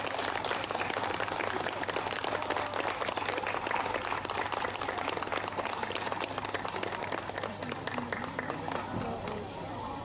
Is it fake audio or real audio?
real